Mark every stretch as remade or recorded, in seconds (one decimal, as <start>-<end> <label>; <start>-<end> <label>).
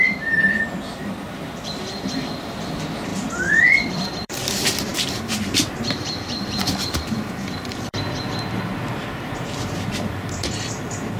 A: 0.0-11.2 remade